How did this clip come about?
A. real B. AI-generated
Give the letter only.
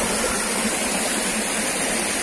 A